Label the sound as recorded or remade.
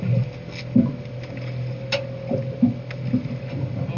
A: recorded